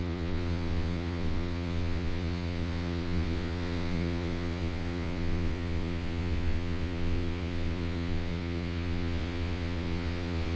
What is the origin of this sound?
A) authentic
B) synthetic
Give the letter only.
B